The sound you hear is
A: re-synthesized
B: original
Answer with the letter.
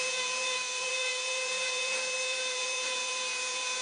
A